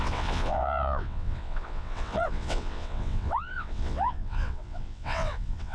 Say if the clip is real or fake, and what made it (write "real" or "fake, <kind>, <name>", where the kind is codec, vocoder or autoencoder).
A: fake, vocoder, WaveNeXt